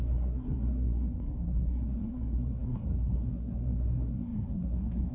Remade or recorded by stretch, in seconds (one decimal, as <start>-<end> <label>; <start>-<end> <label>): 0.0-5.1 remade